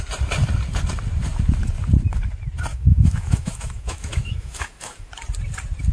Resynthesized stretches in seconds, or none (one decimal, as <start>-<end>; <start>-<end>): 2.7-5.1